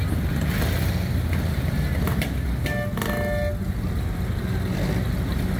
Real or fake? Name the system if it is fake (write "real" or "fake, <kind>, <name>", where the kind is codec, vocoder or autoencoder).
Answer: real